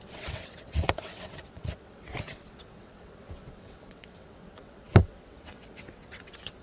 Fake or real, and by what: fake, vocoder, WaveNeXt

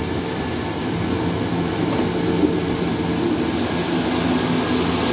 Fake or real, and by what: real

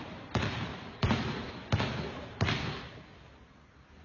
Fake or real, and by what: real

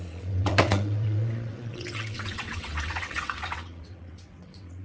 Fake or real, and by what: fake, vocoder, WaveNeXt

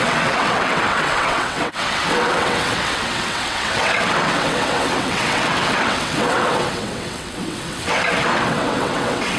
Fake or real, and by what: fake, vocoder, WaveNeXt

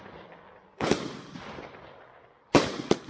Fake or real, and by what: real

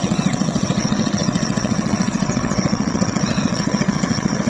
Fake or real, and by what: fake, vocoder, WaveNeXt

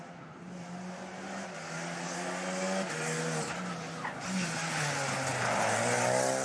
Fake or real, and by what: real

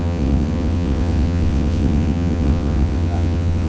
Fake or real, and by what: fake, vocoder, WaveNeXt